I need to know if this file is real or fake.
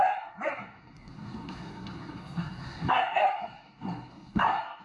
fake